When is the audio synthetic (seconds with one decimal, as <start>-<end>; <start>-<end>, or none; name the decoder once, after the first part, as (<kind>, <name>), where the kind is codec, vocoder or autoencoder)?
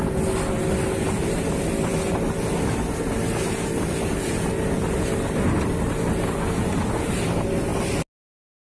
none